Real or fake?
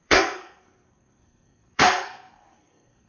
fake